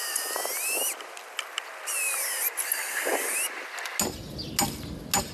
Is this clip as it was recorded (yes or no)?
yes